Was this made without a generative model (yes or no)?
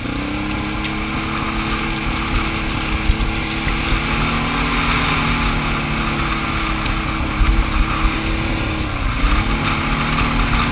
yes